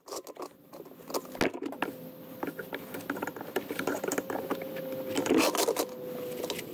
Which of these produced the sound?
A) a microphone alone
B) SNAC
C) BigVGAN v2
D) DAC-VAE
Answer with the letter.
A